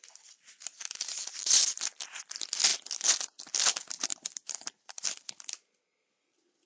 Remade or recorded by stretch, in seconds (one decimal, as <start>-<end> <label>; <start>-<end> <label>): 0.0-6.7 recorded